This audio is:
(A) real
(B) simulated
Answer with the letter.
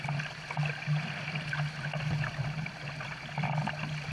A